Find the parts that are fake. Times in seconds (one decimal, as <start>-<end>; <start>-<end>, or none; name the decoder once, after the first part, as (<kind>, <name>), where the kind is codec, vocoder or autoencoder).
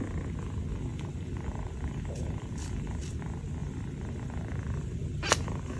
0.9-3.2 (vocoder, BigVGAN v2); 3.6-5.8